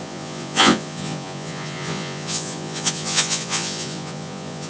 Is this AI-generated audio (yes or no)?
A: yes